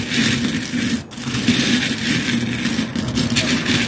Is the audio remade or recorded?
recorded